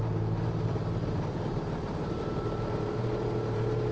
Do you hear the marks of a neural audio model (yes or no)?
yes